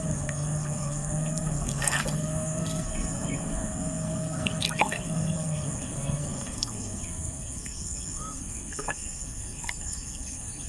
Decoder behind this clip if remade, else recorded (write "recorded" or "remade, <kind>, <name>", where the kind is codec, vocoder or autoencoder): remade, codec, SNAC